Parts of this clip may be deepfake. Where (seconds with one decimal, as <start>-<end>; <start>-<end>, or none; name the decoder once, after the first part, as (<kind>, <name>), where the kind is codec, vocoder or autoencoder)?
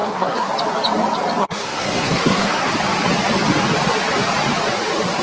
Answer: 0.0-0.5 (codec, SNAC); 1.4-2.7